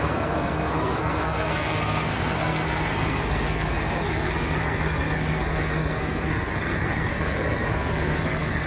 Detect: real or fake fake